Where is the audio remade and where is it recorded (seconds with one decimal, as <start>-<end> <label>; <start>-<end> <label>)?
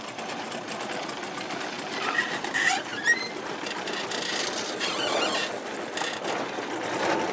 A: 0.0-7.3 recorded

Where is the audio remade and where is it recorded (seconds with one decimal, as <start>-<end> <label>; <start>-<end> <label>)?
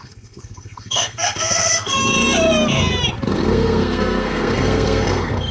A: 0.0-2.0 remade; 2.0-3.3 recorded; 3.3-5.5 remade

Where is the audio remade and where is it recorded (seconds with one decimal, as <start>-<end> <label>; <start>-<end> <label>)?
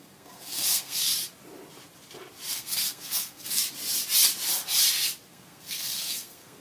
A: 0.0-1.1 remade; 1.1-2.5 recorded; 2.5-3.6 remade; 3.6-5.3 recorded; 5.3-6.6 remade